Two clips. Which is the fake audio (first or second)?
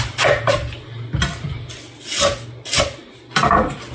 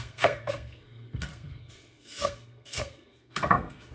second